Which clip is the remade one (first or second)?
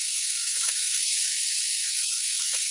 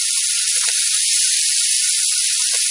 first